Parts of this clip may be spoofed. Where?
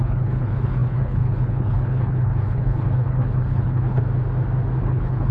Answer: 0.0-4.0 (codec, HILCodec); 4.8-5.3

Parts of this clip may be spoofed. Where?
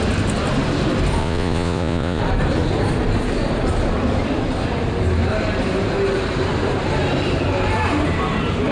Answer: 1.2-2.2 (vocoder, Vocos)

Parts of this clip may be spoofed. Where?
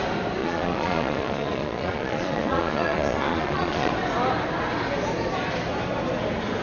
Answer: 0.4-3.9 (vocoder, Vocos)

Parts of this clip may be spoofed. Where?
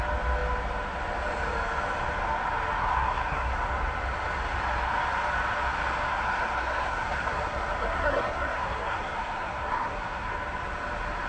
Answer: 2.8-3.5 (codec, SNAC); 6.1-10.3